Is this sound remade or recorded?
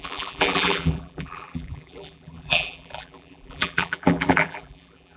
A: remade